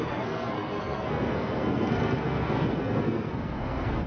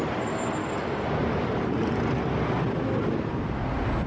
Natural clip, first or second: second